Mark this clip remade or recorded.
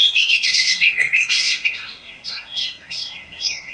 remade